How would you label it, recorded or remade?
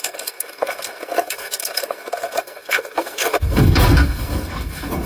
remade